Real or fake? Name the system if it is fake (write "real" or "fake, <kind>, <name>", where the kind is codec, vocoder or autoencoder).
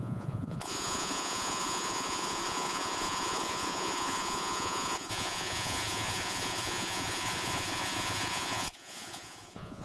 fake, vocoder, Vocos